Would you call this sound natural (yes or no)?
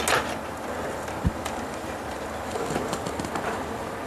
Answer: yes